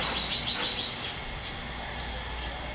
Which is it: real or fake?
real